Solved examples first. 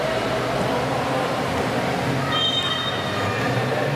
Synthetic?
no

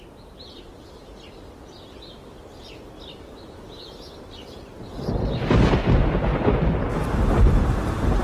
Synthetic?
no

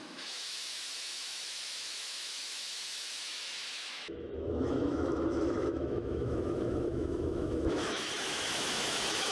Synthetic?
yes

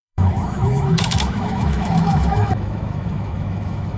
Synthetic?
yes